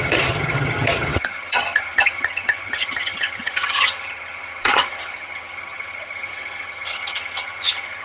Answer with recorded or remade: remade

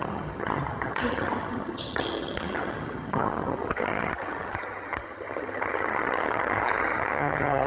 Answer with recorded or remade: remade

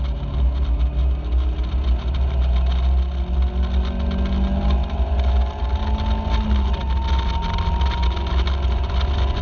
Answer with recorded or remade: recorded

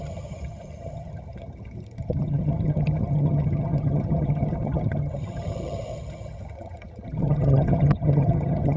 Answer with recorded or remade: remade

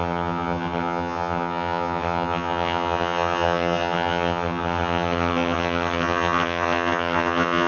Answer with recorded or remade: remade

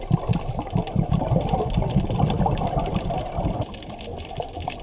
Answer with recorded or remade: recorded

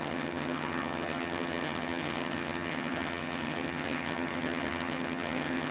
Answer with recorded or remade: remade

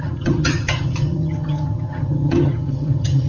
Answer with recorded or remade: remade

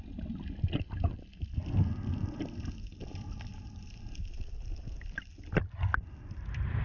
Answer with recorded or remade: recorded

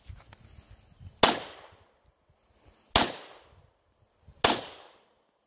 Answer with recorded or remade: recorded